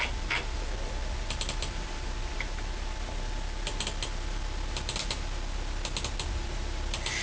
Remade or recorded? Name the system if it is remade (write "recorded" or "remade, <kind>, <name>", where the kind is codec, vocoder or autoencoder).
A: recorded